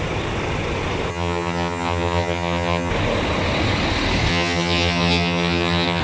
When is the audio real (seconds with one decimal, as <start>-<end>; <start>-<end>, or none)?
0.0-1.1; 2.9-4.3